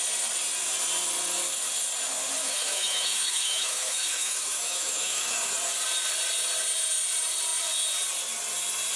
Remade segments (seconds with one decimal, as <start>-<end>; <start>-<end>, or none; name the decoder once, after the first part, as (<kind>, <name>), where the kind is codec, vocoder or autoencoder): 2.4-5.5 (autoencoder, DAC-VAE)